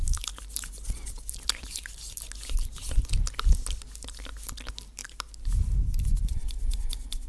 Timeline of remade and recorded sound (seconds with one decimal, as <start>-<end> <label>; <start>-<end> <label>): 0.0-7.3 recorded